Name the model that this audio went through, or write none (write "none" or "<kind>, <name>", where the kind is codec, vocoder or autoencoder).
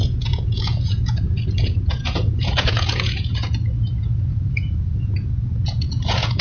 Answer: vocoder, Vocos